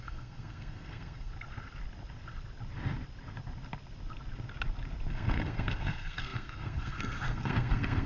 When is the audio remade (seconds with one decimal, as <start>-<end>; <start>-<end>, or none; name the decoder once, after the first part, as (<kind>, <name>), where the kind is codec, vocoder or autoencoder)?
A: 0.0-1.3 (codec, SNAC); 5.1-8.1